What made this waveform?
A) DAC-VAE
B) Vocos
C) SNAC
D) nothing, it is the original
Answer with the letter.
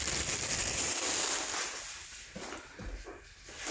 D